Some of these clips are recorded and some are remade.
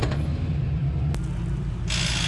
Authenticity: recorded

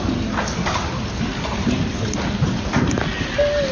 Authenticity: recorded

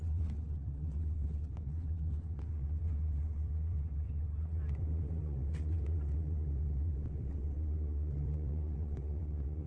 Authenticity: remade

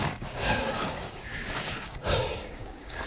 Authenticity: remade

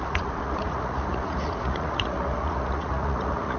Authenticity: remade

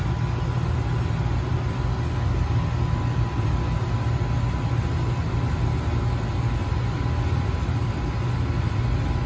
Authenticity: recorded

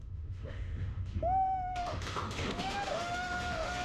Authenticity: remade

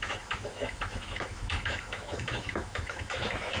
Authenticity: remade